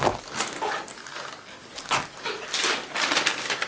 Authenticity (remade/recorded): recorded